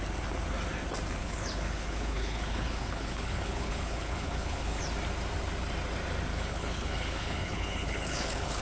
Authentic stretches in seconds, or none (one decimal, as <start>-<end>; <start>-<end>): 0.0-1.2; 4.8-6.3